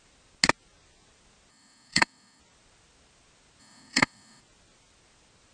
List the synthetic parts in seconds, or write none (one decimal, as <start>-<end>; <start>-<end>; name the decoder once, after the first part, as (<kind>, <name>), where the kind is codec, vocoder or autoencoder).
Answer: 1.5-2.4 (codec, DAC); 3.6-4.4